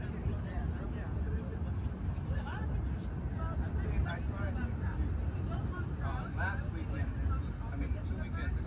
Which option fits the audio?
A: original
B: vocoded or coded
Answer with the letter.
A